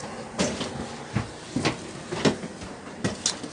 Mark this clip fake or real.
real